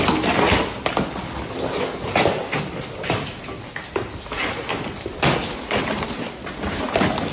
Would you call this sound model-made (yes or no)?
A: no